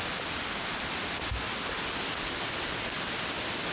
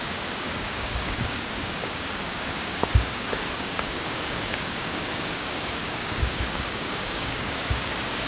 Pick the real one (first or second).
first